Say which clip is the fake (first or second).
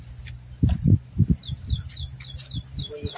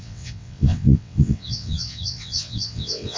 second